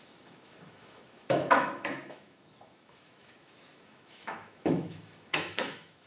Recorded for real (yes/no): no